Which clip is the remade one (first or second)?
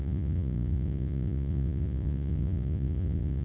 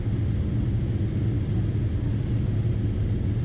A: first